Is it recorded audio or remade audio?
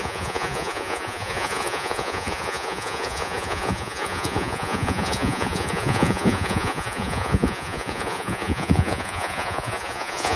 remade